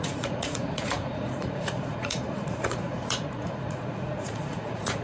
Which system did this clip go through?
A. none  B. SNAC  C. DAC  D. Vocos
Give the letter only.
D